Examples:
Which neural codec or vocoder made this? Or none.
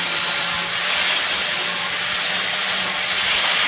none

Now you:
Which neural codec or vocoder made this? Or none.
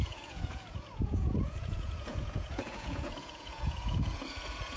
vocoder, Vocos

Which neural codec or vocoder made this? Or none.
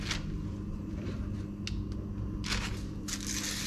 none